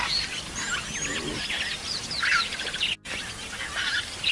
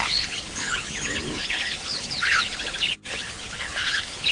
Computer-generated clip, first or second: second